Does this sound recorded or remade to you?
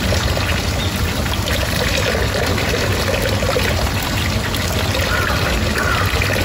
recorded